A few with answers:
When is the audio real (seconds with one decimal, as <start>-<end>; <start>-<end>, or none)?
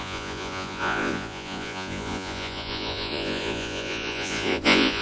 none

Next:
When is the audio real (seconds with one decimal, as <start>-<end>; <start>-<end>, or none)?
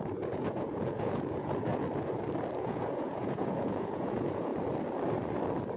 1.7-2.6; 4.5-5.8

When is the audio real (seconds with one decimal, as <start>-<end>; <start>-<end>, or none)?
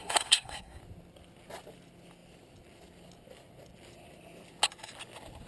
0.8-5.5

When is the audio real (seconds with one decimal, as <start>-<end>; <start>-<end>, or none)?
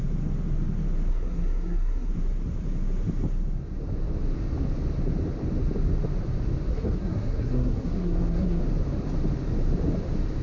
0.0-1.1; 2.1-6.7; 8.6-10.4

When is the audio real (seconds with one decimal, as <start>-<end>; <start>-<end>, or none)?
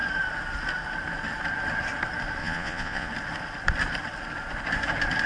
0.0-2.4; 3.1-5.3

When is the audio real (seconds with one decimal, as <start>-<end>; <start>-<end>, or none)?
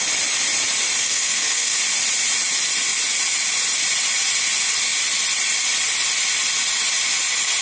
0.0-1.0; 1.8-7.6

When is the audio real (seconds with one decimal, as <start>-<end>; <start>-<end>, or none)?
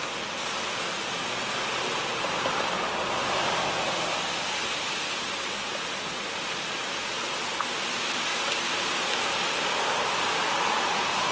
0.0-11.3